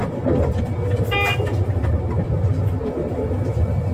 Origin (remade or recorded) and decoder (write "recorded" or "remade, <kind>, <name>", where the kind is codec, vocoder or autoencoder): remade, vocoder, BigVGAN v2